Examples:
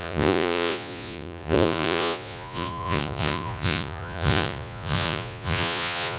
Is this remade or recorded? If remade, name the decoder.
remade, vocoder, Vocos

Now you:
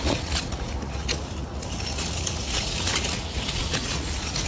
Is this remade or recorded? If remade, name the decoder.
remade, vocoder, Vocos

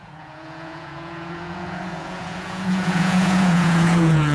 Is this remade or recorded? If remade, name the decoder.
remade, vocoder, Vocos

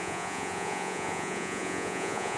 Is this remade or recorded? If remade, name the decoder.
remade, vocoder, Vocos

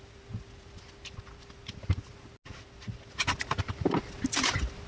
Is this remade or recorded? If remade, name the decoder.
recorded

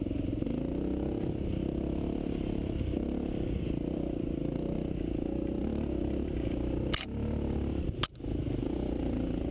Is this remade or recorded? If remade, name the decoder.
recorded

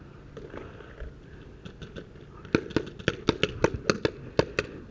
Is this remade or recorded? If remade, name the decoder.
recorded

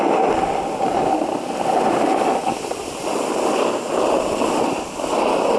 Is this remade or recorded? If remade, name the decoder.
recorded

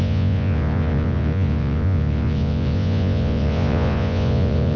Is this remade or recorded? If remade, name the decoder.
remade, vocoder, Vocos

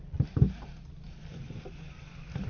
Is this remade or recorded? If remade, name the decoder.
recorded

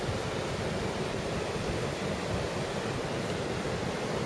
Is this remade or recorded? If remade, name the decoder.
recorded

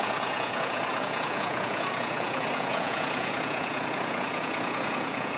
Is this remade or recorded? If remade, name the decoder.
remade, vocoder, Vocos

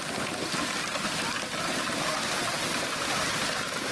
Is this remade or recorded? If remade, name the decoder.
recorded